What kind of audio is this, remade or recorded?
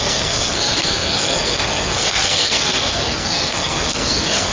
remade